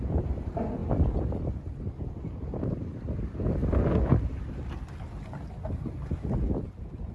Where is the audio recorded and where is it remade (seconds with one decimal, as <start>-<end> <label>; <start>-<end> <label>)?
0.0-7.1 recorded